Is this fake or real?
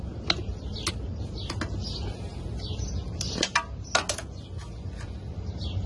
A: real